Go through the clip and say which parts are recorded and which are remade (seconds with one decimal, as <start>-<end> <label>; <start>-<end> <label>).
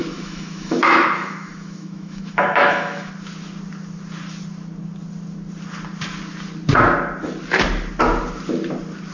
0.0-3.1 remade; 3.1-9.1 recorded